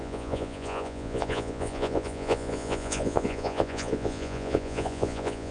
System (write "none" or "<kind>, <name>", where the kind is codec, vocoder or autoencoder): vocoder, Vocos